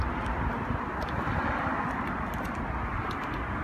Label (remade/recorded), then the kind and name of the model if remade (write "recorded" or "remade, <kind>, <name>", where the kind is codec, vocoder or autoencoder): recorded